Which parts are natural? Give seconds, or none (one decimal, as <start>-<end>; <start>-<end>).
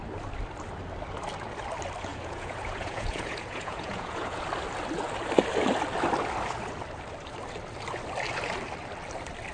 0.0-2.1; 4.4-9.5